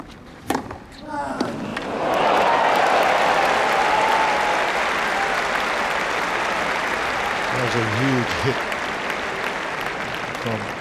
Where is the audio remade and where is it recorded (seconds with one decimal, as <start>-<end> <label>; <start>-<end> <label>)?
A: 0.0-10.8 recorded